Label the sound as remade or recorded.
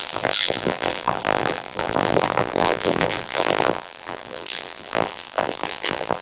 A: remade